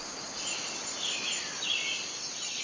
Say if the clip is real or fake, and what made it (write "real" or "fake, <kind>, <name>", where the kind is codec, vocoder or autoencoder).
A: real